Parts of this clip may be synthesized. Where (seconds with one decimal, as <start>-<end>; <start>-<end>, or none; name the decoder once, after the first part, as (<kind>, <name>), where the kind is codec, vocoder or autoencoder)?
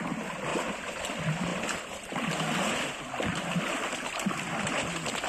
0.5-1.0 (vocoder, BigVGAN v2)